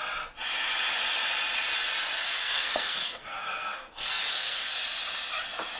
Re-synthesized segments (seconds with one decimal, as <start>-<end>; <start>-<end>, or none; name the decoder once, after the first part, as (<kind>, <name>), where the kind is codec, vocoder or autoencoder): 2.2-4.7 (codec, SNAC)